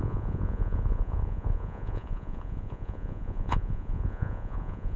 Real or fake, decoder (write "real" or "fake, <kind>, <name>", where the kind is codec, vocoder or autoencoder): fake, vocoder, Vocos